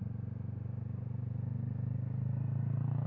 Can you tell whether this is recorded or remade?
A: recorded